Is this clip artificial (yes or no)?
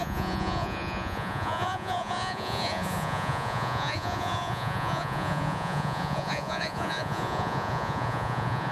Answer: yes